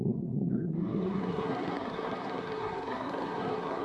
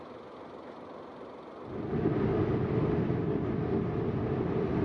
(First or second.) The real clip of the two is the second